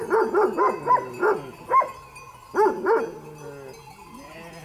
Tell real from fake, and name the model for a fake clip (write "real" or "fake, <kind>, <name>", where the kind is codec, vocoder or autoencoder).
real